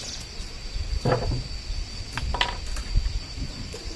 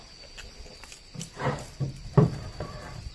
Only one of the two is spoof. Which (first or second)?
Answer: second